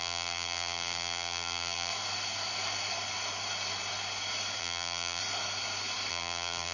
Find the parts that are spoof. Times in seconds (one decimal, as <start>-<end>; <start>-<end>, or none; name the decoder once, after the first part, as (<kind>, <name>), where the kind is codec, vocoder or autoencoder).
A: 0.0-1.9 (vocoder, BigVGAN v2); 4.6-5.2; 6.1-6.7